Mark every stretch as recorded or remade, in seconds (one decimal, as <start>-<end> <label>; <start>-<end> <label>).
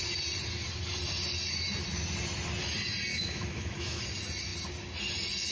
0.0-3.1 recorded; 3.1-4.0 remade; 4.0-5.5 recorded